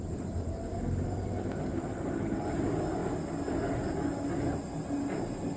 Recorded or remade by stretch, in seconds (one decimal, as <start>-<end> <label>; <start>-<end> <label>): 0.0-5.6 recorded